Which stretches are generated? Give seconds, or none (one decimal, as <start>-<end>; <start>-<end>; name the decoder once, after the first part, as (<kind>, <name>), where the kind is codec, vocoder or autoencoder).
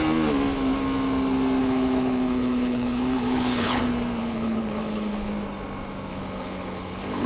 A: 1.6-3.8 (codec, HILCodec); 4.2-5.3; 6.1-7.3